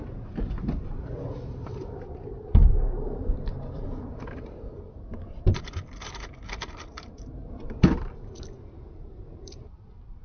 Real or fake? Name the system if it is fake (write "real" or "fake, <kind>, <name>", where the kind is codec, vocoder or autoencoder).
fake, vocoder, BigVGAN v2